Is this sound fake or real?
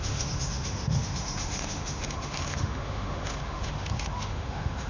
fake